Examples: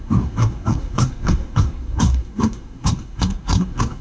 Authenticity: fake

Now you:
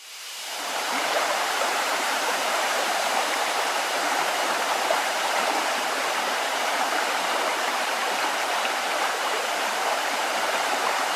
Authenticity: fake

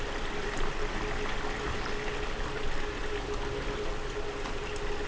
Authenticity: real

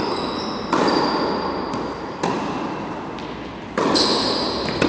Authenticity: real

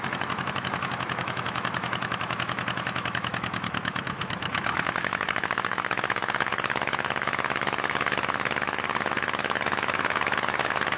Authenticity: fake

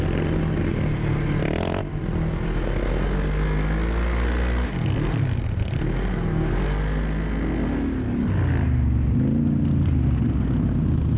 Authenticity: real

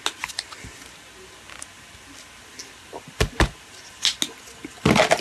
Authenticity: real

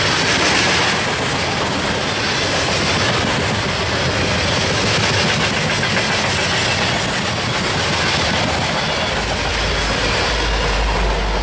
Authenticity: real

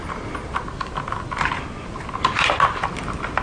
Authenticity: real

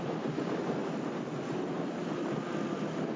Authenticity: real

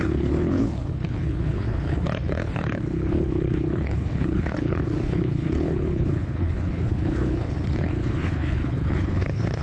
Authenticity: fake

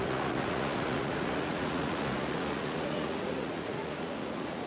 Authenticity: fake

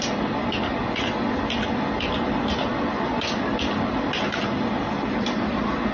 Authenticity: real